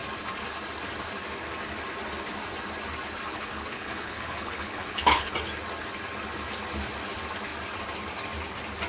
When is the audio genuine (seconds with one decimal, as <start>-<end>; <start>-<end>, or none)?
0.0-3.3; 5.3-8.9